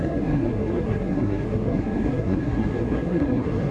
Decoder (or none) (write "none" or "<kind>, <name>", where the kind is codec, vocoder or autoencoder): codec, SNAC